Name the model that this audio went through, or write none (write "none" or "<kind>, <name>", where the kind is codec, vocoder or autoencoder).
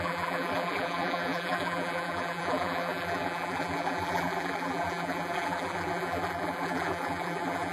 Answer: vocoder, BigVGAN v2